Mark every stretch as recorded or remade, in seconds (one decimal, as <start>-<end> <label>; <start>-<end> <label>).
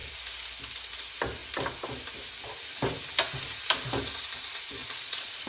0.0-4.8 recorded; 4.8-5.5 remade